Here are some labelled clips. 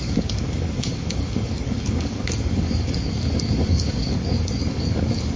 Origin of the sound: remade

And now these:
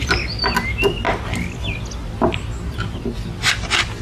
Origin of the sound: recorded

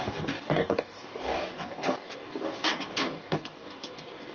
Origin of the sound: remade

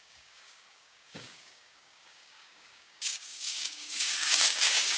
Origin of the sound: remade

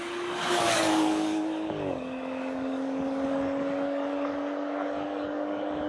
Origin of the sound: remade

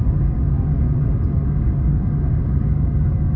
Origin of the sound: remade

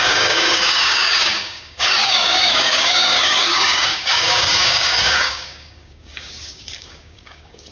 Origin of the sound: remade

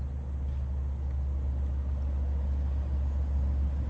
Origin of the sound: recorded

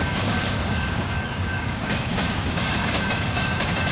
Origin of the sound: remade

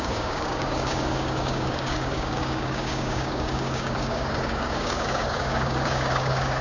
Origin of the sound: remade